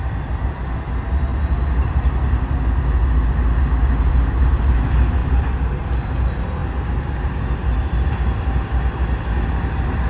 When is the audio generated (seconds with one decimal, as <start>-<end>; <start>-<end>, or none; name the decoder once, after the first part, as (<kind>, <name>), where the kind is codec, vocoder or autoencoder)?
none